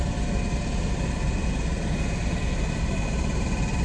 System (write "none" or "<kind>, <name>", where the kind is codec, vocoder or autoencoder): none